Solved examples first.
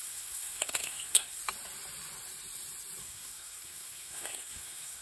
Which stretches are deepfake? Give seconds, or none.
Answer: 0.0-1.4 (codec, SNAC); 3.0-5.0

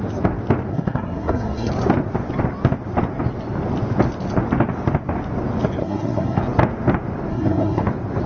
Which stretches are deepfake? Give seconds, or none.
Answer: 0.7-1.7 (codec, SNAC); 5.8-6.4; 7.3-7.9

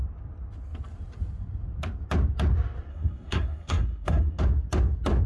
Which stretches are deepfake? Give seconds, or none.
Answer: 2.9-4.4 (codec, SNAC)